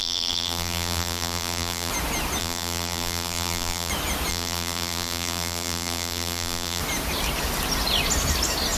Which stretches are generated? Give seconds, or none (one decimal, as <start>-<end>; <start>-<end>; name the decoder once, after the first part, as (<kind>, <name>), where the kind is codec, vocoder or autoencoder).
0.0-1.9 (vocoder, BigVGAN v2); 2.4-3.9; 4.3-6.8